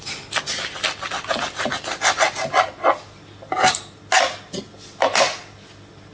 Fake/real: real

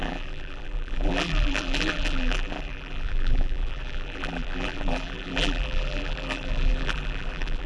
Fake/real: fake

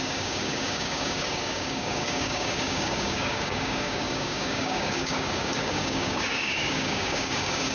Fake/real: fake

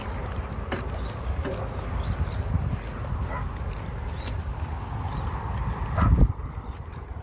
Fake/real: real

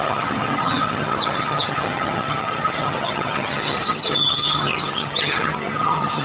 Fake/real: fake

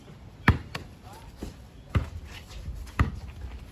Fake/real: real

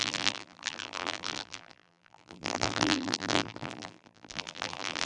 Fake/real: fake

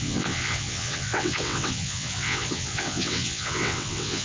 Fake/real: fake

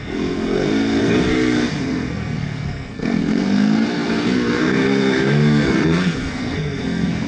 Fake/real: fake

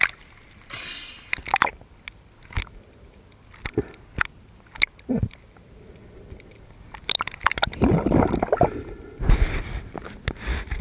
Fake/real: real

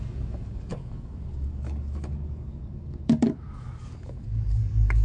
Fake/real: fake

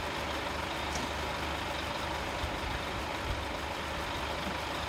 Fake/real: real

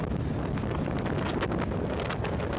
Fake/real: real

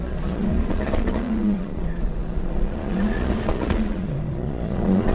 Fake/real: fake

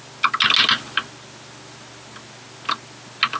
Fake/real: real